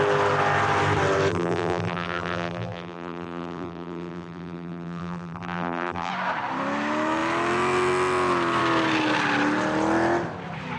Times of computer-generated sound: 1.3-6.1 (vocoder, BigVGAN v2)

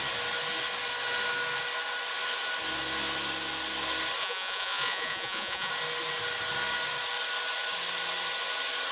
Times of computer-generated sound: 4.2-5.7 (vocoder, Vocos)